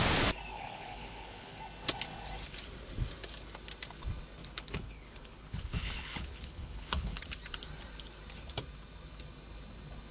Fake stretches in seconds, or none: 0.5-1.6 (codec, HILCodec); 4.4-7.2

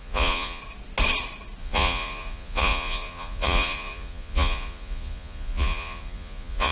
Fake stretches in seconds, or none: 0.0-0.6 (vocoder, Vocos); 1.6-6.7